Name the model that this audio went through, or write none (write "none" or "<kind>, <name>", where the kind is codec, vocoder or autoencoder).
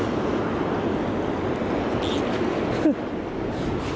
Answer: none